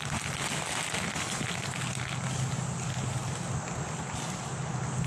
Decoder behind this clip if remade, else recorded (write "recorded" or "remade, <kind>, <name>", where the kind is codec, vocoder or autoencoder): recorded